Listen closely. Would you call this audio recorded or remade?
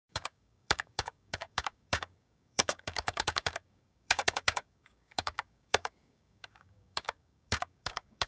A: remade